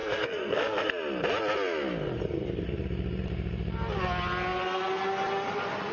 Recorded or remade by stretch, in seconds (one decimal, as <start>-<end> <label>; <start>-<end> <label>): 0.0-0.9 remade; 0.9-5.9 recorded